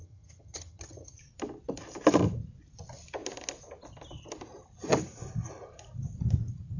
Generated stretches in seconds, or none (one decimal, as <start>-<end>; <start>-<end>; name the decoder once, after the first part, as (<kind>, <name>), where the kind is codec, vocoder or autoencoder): 0.0-1.2 (vocoder, HiFi-GAN)